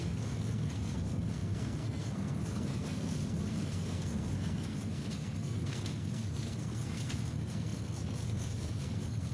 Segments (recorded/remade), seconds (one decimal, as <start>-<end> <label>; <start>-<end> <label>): 0.0-9.3 remade